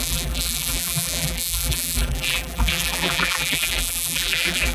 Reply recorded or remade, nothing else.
remade